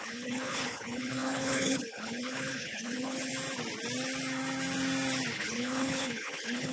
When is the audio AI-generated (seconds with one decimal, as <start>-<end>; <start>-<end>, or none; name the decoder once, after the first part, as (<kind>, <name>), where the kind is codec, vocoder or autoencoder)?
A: 0.0-3.3 (codec, HILCodec); 5.3-6.7